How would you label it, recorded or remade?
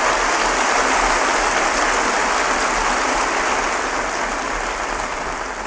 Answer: recorded